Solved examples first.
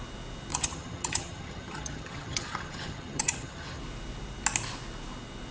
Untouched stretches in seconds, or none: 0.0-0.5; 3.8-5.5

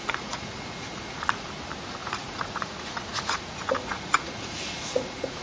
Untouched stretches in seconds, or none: 1.5-2.0